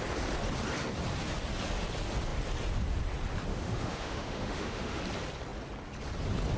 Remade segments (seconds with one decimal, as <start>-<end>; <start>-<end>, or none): 3.5-5.0